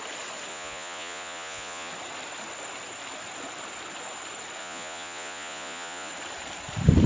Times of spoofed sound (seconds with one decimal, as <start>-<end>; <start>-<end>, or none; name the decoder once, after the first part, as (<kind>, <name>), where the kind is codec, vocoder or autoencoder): 0.5-1.9 (vocoder, Vocos); 4.6-6.1